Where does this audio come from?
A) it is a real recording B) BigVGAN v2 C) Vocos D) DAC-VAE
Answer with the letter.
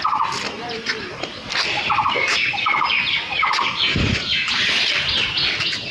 A